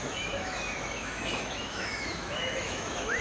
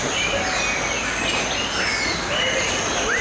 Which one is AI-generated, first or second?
first